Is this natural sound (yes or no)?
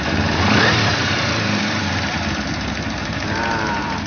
no